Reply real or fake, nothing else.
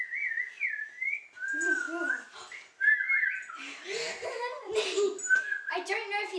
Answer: real